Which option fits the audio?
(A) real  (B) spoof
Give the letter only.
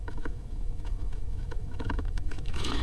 B